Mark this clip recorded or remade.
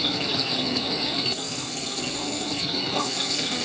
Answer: remade